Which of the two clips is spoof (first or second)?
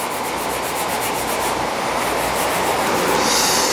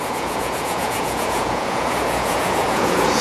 second